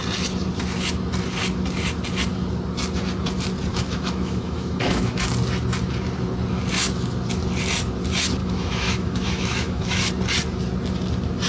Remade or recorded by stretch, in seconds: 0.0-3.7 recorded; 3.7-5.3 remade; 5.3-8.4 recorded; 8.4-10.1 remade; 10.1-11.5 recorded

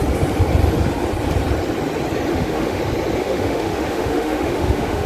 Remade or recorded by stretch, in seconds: 0.0-2.3 recorded; 2.3-2.8 remade; 2.8-3.2 recorded; 3.2-5.1 remade

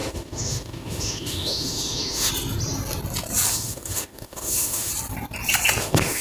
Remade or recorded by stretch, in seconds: 0.0-2.3 remade; 2.3-3.5 recorded; 3.5-4.9 remade; 4.9-5.8 recorded; 5.8-6.2 remade